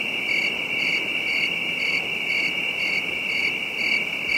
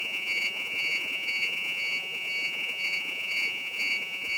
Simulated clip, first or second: second